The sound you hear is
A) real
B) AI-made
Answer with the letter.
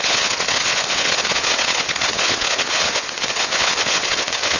B